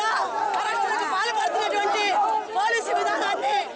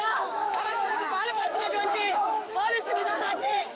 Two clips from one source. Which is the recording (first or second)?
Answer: first